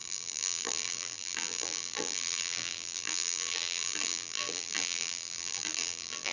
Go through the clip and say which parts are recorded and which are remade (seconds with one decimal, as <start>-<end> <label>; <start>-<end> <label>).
0.0-6.3 remade